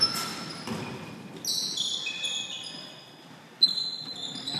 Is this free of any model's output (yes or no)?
yes